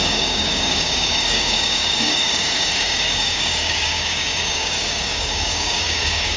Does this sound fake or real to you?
fake